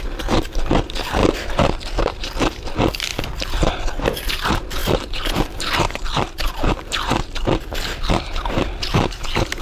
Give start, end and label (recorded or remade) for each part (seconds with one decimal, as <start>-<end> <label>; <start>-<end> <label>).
0.0-1.2 remade; 1.2-2.0 recorded; 2.0-9.6 remade